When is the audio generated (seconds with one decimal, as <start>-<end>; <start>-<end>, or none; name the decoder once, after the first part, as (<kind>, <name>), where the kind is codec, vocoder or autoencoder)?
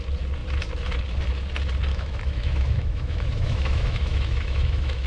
1.9-5.1 (autoencoder, DAC-VAE)